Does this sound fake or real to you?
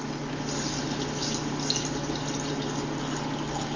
real